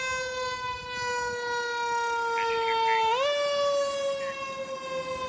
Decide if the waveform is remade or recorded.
recorded